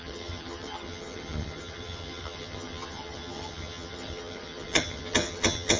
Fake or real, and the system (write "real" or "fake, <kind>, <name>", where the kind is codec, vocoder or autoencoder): fake, vocoder, HiFi-GAN